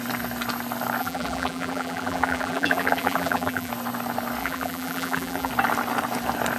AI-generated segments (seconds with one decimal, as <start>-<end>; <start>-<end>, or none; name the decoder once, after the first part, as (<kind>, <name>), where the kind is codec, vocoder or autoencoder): 1.0-3.7 (vocoder, BigVGAN v2); 4.4-5.5